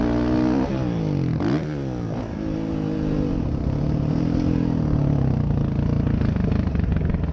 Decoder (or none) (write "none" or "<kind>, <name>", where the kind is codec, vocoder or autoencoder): none